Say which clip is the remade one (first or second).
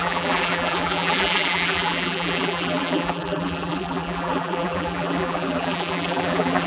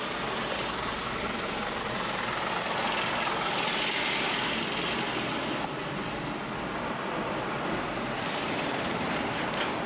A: first